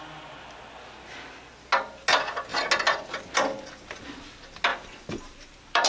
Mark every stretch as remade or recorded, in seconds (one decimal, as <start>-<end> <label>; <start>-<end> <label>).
0.0-4.7 recorded; 4.7-5.9 remade